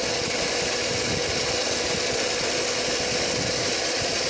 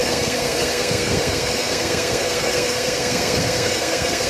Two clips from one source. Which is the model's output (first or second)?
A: second